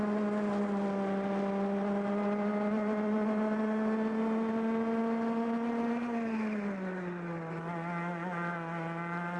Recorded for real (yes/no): yes